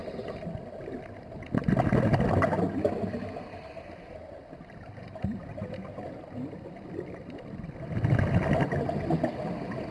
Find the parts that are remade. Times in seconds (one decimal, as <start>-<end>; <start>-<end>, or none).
none